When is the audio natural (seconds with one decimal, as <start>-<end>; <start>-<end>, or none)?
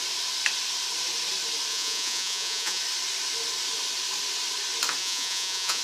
0.0-1.7; 2.8-5.0